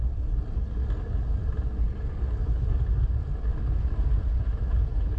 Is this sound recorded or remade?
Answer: recorded